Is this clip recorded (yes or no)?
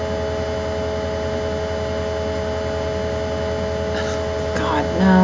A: yes